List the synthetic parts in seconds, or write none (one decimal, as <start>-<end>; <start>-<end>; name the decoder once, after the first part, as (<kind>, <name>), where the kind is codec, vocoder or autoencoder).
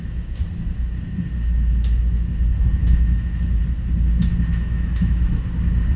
2.8-3.6 (autoencoder, DAC-VAE); 4.5-5.3